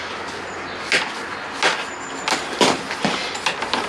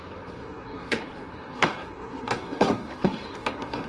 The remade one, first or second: second